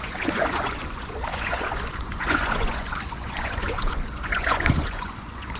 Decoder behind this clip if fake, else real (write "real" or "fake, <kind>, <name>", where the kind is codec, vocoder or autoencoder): fake, vocoder, Vocos